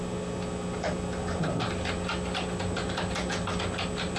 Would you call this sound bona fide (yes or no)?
yes